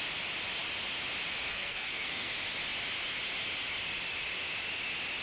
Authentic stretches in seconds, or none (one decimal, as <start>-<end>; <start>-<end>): 0.0-1.5; 2.3-5.2